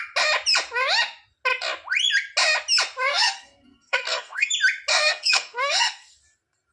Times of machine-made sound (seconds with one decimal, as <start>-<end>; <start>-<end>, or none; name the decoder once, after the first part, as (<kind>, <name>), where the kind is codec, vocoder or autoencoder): 3.1-4.5 (codec, SNAC); 4.9-6.2